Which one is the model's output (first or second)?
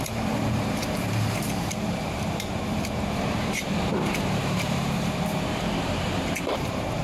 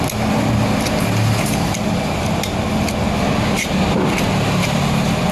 first